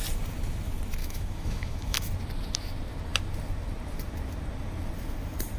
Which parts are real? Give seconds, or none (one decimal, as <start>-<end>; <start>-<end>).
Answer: 0.0-1.0; 2.1-5.6